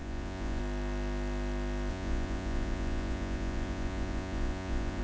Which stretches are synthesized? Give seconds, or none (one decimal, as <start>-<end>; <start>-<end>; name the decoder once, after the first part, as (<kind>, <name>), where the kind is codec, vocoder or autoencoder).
0.0-0.6 (vocoder, Vocos); 1.9-5.0